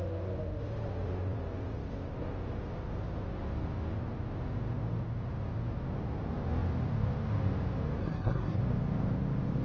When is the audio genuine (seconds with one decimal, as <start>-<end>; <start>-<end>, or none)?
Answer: 0.0-8.0; 8.6-9.6